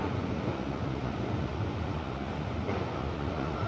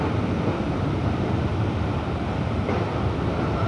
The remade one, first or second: first